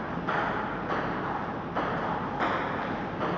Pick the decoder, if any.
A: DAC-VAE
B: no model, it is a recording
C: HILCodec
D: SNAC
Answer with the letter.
B